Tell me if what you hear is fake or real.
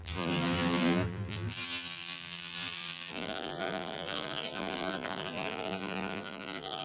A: fake